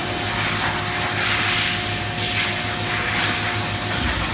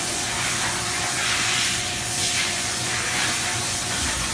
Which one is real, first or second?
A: first